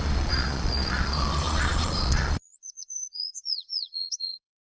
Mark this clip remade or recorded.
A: remade